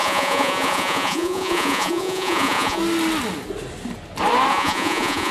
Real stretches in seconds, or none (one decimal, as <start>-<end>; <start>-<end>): 2.8-4.5